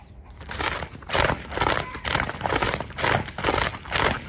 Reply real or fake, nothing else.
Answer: real